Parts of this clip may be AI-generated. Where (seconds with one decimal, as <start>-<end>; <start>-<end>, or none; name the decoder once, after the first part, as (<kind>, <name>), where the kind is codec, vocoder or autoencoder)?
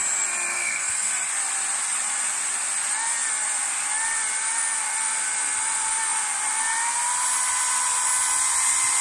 0.5-1.1 (codec, SNAC)